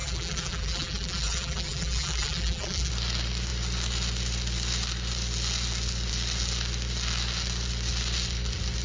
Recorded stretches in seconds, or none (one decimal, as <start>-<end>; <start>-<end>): 2.9-8.8